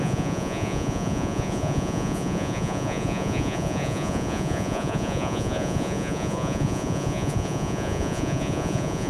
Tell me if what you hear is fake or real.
fake